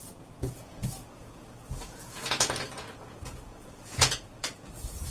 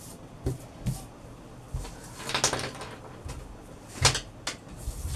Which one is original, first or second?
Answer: second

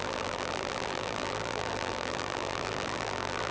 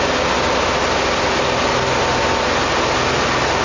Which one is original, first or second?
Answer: second